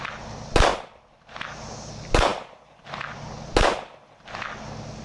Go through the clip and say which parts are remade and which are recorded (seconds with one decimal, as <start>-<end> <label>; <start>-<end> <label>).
0.0-5.0 recorded